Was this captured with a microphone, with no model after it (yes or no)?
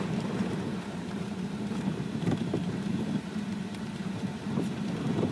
no